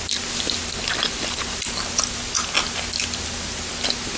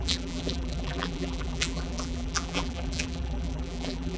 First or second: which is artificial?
second